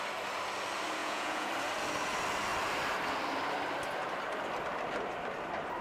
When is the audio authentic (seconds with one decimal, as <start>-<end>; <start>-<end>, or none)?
0.0-1.0; 1.5-5.8